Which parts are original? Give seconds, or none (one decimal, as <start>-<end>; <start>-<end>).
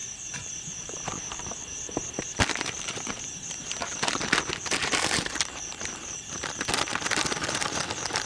3.7-4.8; 6.3-8.3